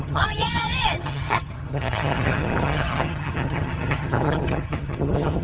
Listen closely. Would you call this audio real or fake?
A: fake